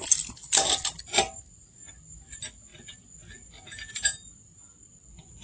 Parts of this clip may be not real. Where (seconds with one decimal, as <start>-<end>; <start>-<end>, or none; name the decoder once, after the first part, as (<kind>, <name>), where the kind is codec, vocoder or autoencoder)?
none